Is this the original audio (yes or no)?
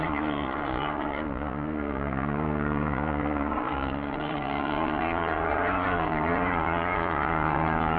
no